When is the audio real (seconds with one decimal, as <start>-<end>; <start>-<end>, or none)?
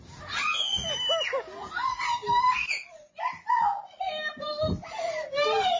0.0-5.8